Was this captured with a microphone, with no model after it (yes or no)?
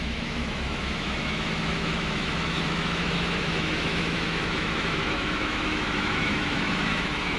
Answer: no